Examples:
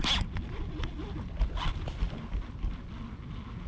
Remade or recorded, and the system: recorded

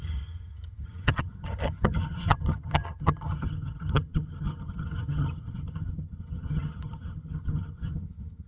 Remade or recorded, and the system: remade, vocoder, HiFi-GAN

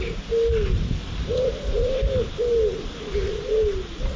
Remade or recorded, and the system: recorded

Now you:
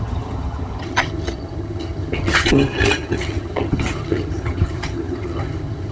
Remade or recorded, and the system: remade, vocoder, HiFi-GAN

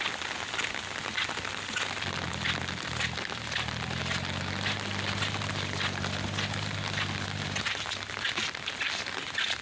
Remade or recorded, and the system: recorded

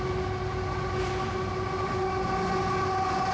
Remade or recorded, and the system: recorded